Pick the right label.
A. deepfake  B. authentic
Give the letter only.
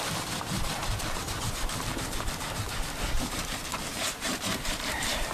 A